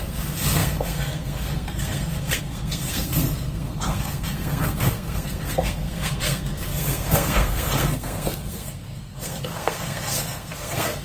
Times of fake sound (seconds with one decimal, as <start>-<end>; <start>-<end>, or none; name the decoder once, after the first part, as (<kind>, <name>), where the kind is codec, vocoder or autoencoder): 0.0-11.0 (codec, SNAC)